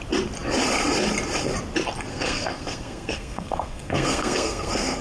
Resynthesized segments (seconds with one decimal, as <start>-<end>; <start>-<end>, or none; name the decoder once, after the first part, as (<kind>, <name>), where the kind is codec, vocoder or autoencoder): 2.1-5.0 (codec, SNAC)